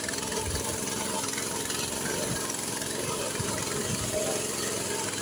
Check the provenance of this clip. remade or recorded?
remade